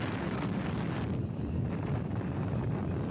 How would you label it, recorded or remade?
recorded